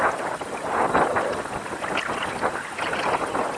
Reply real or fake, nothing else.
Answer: real